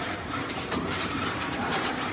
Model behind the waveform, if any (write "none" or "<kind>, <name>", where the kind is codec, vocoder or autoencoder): vocoder, BigVGAN v2